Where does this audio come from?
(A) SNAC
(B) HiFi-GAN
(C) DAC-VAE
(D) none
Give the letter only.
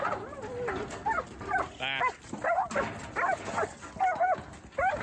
D